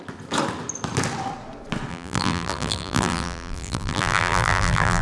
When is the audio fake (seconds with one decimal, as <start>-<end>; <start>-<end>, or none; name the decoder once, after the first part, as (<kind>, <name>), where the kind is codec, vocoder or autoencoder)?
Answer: 1.9-5.0 (vocoder, BigVGAN v2)